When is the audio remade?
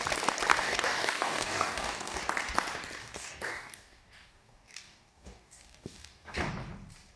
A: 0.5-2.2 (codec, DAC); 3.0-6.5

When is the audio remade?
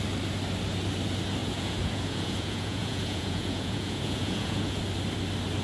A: 1.4-4.8 (vocoder, Vocos)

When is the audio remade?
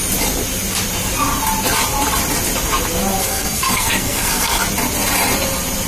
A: 3.2-4.6 (codec, SNAC)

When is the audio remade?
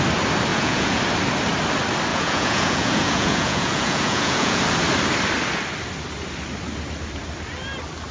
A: 0.5-1.0 (vocoder, Vocos); 2.1-4.6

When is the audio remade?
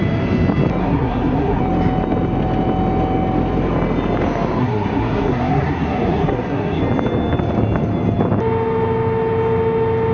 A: 0.8-1.6 (codec, SNAC); 4.6-6.8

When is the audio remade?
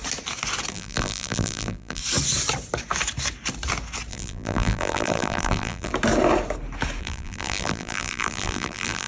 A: 0.7-2.0 (vocoder, BigVGAN v2); 4.1-5.9; 7.0-9.1